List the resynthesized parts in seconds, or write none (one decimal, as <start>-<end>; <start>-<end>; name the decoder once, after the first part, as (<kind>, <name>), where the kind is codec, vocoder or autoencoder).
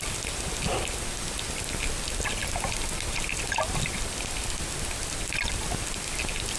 none